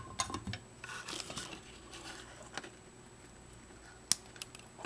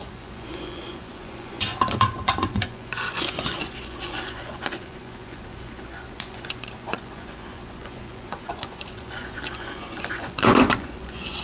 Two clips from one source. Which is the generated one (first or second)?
second